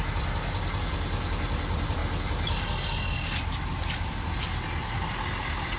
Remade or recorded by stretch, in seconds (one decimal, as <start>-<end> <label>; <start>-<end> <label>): 0.0-5.8 recorded